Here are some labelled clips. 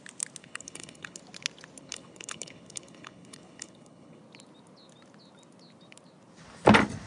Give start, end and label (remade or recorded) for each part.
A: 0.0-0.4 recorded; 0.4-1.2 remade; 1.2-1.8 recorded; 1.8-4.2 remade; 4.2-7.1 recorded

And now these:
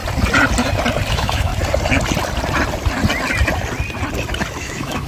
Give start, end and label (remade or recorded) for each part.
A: 0.0-1.1 recorded; 1.1-1.5 remade; 1.5-4.6 recorded; 4.6-5.1 remade